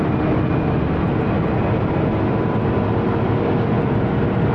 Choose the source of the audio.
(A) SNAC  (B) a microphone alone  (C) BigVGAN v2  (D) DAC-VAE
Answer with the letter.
B